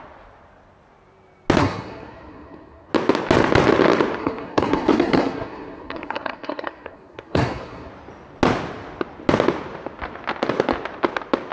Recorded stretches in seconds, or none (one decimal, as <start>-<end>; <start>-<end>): 0.0-1.6; 2.9-4.2; 7.9-11.5